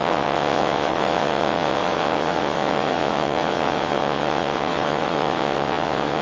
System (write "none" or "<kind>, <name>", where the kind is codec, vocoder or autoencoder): vocoder, WaveNeXt